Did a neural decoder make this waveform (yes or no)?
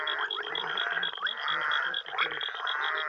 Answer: yes